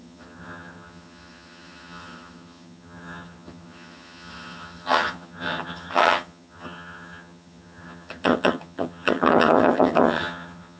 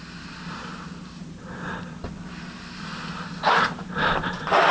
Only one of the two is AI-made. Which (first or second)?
first